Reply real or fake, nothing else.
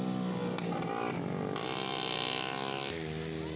real